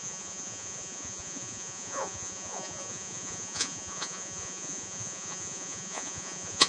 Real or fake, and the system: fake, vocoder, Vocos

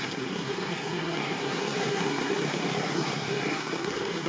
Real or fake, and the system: fake, codec, SNAC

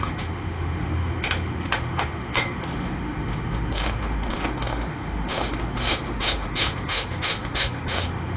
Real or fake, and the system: fake, autoencoder, DAC-VAE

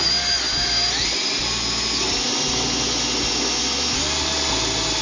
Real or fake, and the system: real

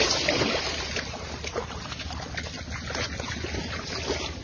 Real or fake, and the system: real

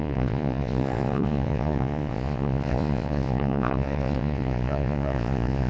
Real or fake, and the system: fake, vocoder, Vocos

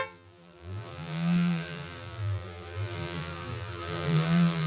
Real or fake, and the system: fake, vocoder, BigVGAN v2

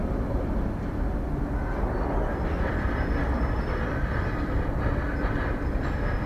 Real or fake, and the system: real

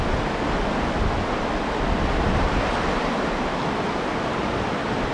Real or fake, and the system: real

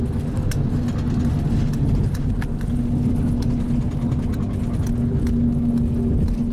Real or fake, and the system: real